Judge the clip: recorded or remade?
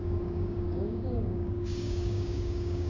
remade